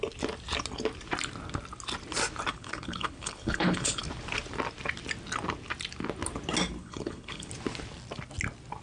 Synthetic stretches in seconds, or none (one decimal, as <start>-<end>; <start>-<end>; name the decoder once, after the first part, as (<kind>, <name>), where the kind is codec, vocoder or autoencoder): 2.5-4.0 (codec, HILCodec); 6.8-7.5